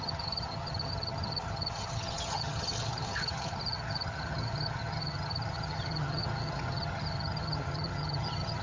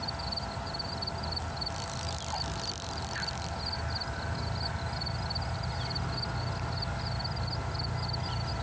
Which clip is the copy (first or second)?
first